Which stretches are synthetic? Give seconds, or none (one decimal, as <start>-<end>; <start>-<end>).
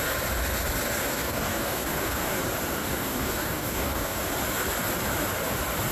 1.0-2.4; 2.8-4.2